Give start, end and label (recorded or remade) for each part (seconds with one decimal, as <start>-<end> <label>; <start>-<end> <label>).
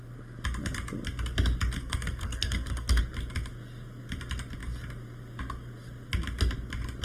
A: 0.0-1.8 recorded; 1.8-3.0 remade; 3.0-7.0 recorded